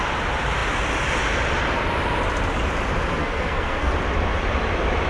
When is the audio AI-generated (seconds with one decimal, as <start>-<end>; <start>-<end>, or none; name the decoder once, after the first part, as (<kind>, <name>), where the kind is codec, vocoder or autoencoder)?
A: 3.2-3.9 (codec, SNAC)